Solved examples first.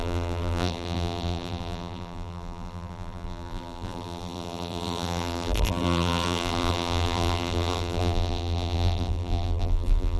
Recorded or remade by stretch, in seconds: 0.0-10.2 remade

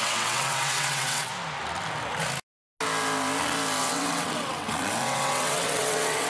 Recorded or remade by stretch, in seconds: 0.0-1.3 remade; 1.3-3.8 recorded; 3.8-6.3 remade

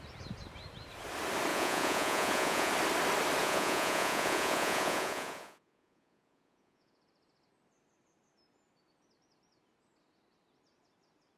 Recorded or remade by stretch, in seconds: 0.0-1.5 recorded; 1.5-2.7 remade; 2.7-3.4 recorded; 3.4-7.0 remade; 7.0-11.4 recorded

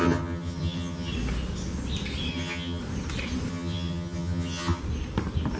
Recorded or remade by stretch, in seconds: 0.0-1.1 remade; 1.1-2.3 recorded; 2.3-2.8 remade; 2.8-3.5 recorded; 3.5-4.8 remade; 4.8-5.6 recorded

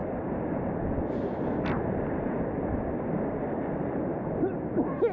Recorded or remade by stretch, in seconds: 0.0-5.1 recorded

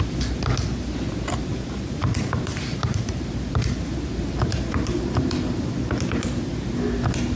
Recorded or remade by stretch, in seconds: 0.0-1.4 recorded; 1.4-5.7 remade; 5.7-7.4 recorded